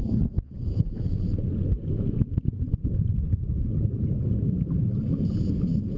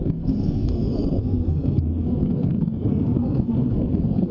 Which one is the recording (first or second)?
first